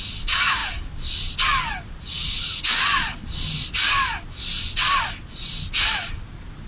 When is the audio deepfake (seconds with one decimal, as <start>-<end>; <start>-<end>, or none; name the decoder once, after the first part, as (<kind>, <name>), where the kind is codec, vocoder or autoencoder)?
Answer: none